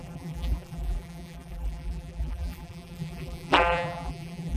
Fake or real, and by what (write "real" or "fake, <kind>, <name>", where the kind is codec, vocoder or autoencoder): fake, vocoder, BigVGAN v2